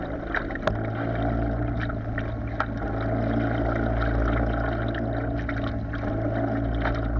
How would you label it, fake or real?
real